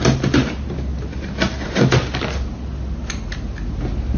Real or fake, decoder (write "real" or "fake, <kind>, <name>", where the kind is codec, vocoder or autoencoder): real